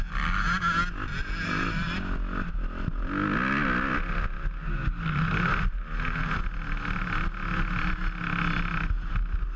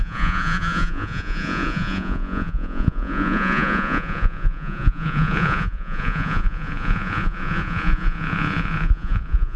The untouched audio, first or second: first